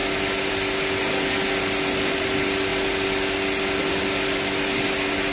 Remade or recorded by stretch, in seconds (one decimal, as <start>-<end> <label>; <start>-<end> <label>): 0.0-5.3 recorded

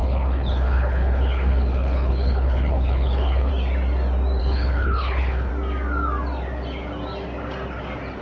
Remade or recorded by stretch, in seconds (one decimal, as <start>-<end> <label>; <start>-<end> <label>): 0.0-3.5 remade; 3.5-4.4 recorded; 4.4-5.5 remade; 5.5-8.2 recorded